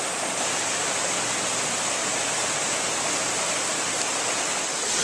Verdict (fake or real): real